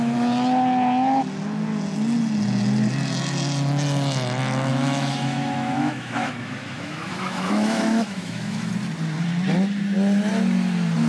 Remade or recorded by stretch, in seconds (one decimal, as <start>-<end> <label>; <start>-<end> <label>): 0.0-4.7 recorded; 4.7-8.7 remade; 8.7-11.1 recorded